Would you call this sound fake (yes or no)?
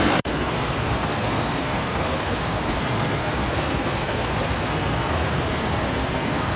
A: yes